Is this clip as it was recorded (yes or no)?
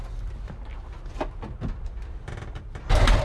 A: no